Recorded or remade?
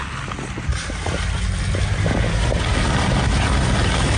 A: recorded